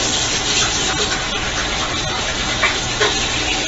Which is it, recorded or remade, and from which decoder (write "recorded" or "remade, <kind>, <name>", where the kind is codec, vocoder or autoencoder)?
recorded